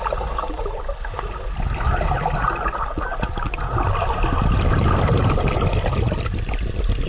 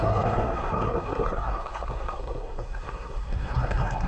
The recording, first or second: first